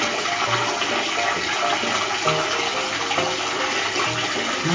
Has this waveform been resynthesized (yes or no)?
no